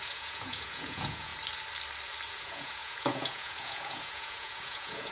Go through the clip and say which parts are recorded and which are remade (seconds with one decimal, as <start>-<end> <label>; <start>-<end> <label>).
0.0-1.3 remade; 1.3-2.3 recorded; 2.3-5.1 remade